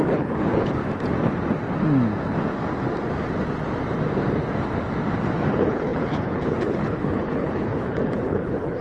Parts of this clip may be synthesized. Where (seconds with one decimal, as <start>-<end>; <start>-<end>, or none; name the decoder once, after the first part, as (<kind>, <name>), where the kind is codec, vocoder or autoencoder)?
0.0-0.8 (codec, HILCodec); 5.5-8.8